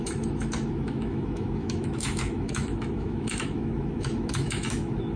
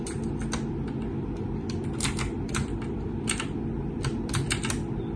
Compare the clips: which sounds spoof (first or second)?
first